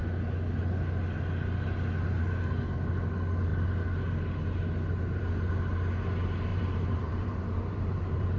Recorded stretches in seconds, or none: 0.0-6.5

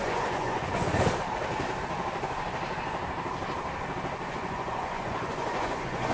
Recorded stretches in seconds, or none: 0.9-4.3

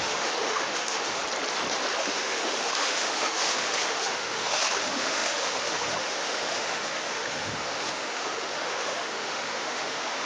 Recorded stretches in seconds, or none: 1.2-2.0

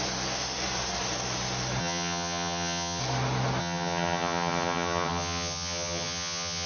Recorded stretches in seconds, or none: 0.0-1.8; 3.0-3.6

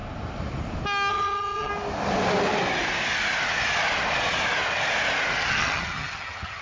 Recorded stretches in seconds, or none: 0.0-1.1; 1.7-5.5

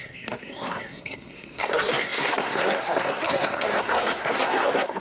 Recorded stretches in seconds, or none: none

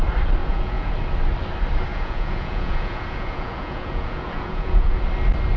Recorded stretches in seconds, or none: 0.0-0.4; 0.9-1.9; 5.0-5.6